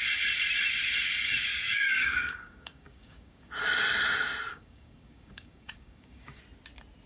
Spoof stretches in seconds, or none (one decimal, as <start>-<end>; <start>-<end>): 1.5-3.5; 4.5-6.4